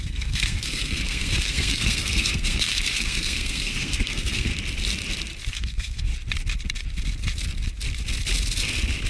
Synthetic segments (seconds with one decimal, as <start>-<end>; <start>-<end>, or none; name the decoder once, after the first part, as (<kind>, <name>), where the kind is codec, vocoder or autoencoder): 0.0-4.5 (codec, SNAC); 5.5-6.1